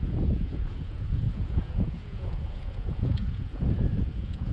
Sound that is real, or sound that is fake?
fake